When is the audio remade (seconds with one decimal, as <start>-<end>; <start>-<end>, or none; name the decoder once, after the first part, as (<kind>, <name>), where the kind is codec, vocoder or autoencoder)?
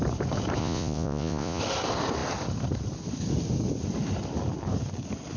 0.6-1.6 (vocoder, Vocos)